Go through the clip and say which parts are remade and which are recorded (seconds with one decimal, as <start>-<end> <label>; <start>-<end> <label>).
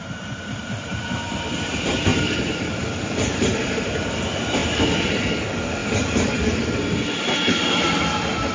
0.0-5.8 remade; 5.8-6.4 recorded; 6.4-8.5 remade